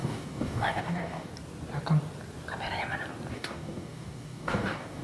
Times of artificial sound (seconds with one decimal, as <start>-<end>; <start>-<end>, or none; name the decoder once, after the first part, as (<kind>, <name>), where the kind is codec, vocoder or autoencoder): 0.0-1.3 (codec, DAC); 3.3-5.0